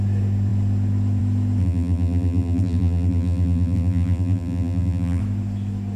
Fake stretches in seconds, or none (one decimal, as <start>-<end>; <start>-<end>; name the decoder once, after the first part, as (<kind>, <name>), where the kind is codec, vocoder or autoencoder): 1.6-5.2 (vocoder, BigVGAN v2)